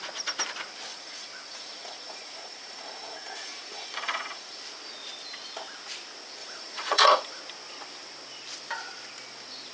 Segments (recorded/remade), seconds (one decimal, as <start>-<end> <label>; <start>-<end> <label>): 0.0-0.9 recorded; 0.9-4.6 remade; 4.6-6.4 recorded; 6.4-7.4 remade; 7.4-9.7 recorded